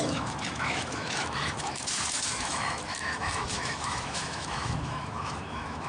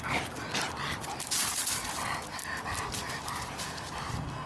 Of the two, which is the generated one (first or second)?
first